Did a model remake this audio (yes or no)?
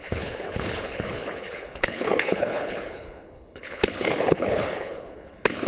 yes